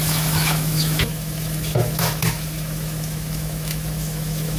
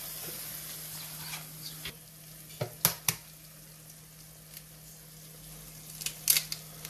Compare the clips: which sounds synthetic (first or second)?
first